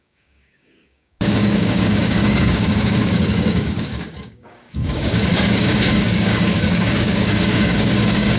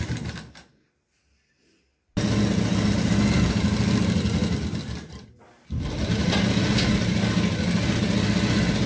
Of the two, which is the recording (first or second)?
second